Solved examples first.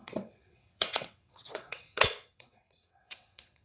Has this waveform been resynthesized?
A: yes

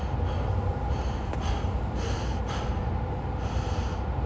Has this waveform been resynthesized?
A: no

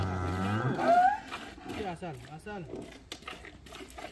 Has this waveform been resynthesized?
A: no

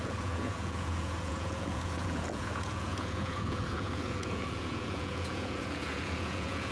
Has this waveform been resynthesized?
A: yes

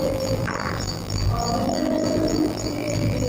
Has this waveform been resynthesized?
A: yes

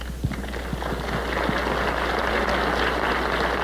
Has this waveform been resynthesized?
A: no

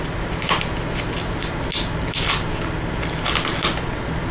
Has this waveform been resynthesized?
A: no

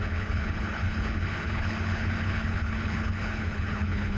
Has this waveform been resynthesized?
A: yes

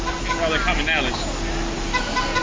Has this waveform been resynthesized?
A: no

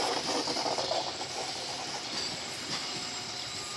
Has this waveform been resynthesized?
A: no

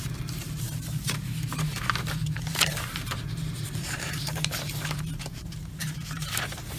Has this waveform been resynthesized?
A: yes